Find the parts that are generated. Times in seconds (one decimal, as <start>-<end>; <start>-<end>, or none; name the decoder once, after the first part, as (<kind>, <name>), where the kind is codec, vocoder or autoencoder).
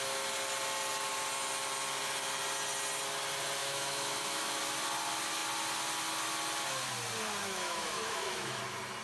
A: 3.6-4.6 (autoencoder, DAC-VAE); 7.4-8.6